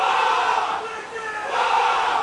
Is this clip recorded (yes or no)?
no